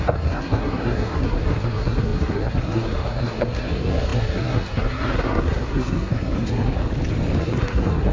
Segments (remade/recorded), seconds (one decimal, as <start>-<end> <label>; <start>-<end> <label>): 0.0-6.8 remade; 6.8-7.4 recorded; 7.4-8.1 remade